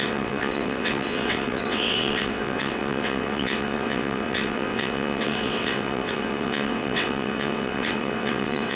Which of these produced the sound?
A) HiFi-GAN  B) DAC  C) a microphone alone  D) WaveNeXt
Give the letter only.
D